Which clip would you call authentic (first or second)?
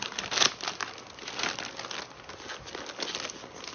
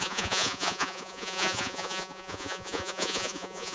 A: first